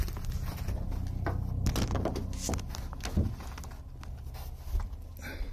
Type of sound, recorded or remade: recorded